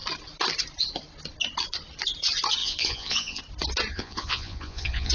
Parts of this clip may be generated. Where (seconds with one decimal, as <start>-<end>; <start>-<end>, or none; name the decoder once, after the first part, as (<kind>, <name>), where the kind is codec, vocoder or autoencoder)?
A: 2.6-3.4 (vocoder, Vocos); 3.9-5.1